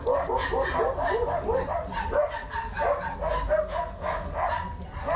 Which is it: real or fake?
real